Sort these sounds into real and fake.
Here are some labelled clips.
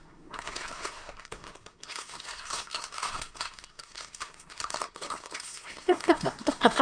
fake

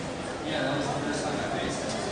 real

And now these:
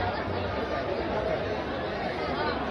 real